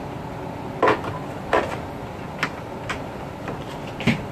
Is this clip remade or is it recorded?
recorded